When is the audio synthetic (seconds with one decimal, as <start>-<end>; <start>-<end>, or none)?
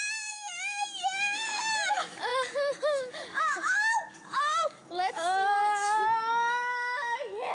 0.0-7.5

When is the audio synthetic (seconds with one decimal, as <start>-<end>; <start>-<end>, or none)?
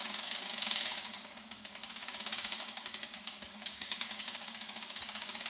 0.0-5.5